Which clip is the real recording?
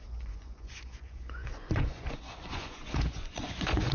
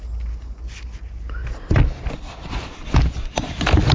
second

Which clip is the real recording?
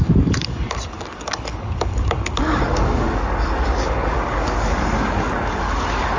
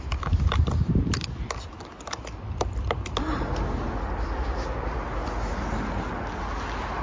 second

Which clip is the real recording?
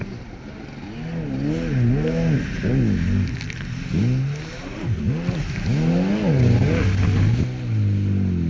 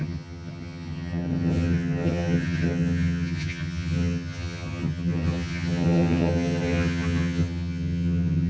first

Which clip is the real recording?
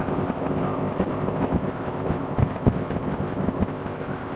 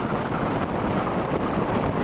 second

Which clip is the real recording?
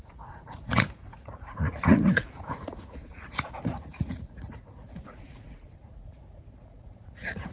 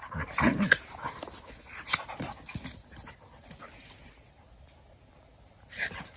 second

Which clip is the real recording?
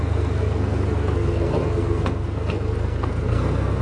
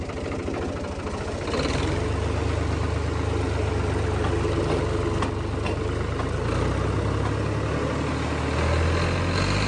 second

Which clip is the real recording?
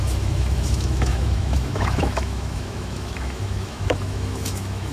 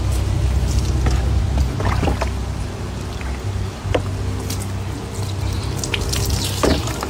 second